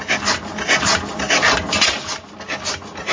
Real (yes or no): yes